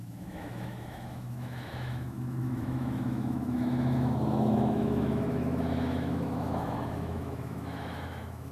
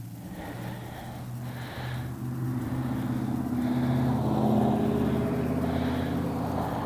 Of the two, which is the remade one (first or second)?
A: first